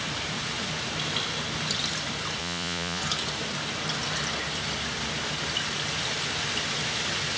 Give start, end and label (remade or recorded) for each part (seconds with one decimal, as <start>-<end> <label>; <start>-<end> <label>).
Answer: 0.0-2.4 recorded; 2.4-3.0 remade; 3.0-7.4 recorded